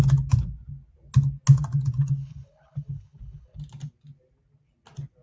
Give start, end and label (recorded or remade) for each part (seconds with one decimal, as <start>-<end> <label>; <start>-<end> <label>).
0.0-2.2 recorded; 2.2-3.6 remade; 3.6-5.2 recorded